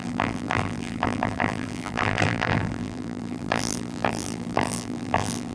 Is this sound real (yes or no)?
no